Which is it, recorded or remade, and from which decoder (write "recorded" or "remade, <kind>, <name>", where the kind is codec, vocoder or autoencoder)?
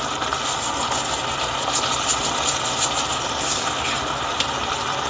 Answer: recorded